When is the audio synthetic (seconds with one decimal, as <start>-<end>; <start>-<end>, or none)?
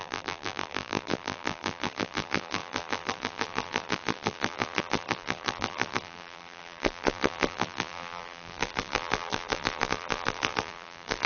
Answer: 0.0-11.3